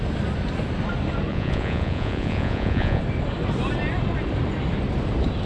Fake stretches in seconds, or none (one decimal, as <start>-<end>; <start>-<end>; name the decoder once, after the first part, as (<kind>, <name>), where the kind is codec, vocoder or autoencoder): 1.3-3.0 (vocoder, Vocos)